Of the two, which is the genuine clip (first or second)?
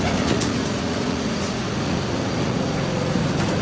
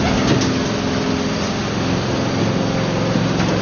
second